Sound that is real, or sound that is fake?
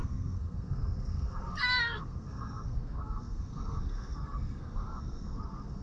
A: fake